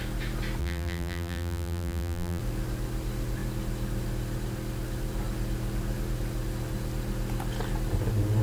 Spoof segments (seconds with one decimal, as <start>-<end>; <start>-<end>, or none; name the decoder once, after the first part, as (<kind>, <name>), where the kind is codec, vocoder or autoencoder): 0.6-2.4 (vocoder, BigVGAN v2)